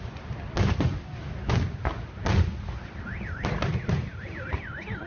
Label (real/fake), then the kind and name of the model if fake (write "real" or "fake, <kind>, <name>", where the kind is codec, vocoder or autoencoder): real